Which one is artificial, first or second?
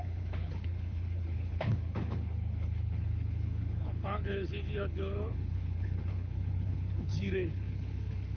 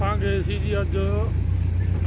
first